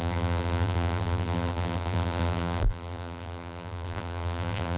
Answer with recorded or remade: remade